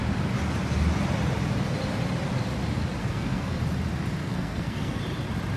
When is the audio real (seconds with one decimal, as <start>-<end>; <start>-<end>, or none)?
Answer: 0.0-3.0; 3.6-4.2; 5.0-5.6